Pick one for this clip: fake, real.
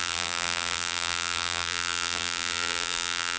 fake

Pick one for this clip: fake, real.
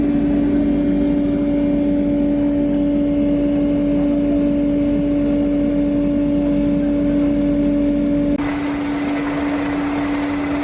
real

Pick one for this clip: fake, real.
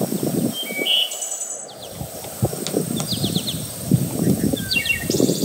real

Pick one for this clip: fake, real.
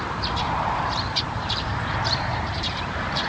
fake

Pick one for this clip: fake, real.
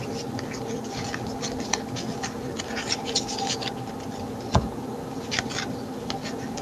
real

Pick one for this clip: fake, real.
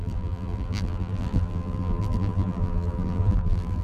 fake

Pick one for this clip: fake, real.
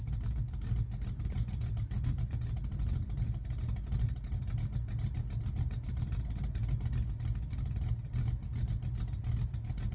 real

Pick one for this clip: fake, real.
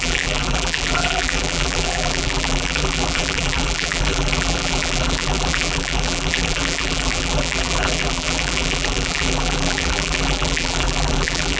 fake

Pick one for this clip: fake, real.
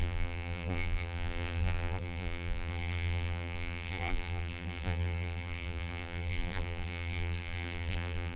fake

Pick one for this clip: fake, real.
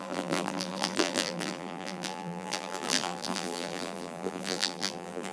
fake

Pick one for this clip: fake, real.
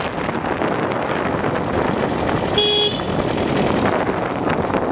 real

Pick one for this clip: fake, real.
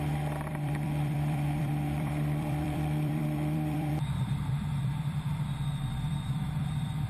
fake